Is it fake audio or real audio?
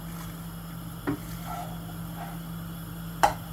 real